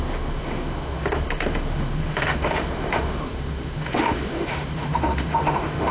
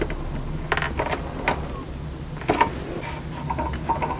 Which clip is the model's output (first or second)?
first